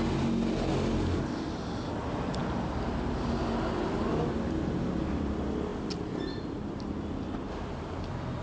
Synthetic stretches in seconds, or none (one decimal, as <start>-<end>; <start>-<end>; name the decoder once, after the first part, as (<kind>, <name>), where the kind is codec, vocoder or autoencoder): none